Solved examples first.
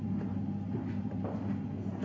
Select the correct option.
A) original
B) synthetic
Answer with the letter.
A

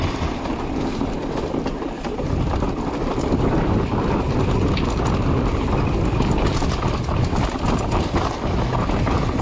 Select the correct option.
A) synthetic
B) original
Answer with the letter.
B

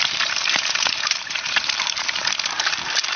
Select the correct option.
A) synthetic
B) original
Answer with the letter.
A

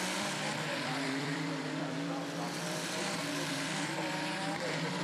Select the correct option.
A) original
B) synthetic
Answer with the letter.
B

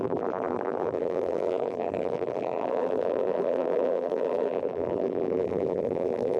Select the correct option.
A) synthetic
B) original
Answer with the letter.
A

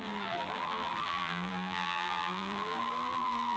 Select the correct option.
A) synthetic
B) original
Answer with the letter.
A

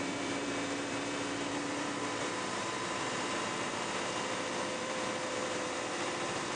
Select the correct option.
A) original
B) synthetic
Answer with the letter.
B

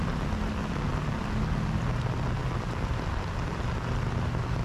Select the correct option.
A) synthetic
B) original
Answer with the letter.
B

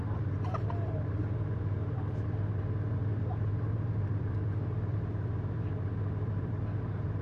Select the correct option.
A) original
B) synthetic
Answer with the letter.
B